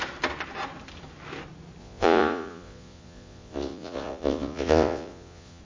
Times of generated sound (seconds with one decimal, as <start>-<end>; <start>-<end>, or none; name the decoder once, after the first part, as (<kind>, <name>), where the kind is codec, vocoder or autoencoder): 1.8-5.6 (vocoder, Vocos)

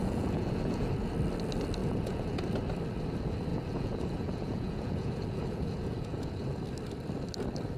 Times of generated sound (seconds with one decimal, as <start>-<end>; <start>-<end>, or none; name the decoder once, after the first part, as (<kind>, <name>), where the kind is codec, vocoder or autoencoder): 0.0-1.1 (vocoder, Vocos); 1.8-2.4; 3.5-6.6